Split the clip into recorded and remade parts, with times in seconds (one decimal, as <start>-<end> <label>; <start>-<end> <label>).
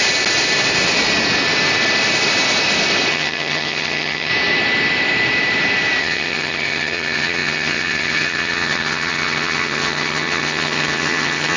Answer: 0.0-3.1 recorded; 3.1-4.3 remade; 4.3-6.0 recorded; 6.0-11.6 remade